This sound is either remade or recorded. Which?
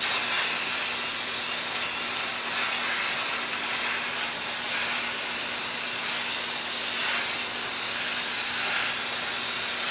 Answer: recorded